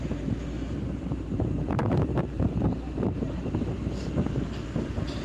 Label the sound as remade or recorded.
remade